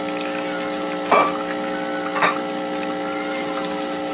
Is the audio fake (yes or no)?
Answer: no